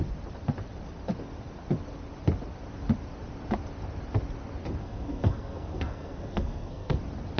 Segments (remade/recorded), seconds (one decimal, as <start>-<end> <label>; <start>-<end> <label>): 0.0-4.8 recorded; 4.8-7.0 remade; 7.0-7.4 recorded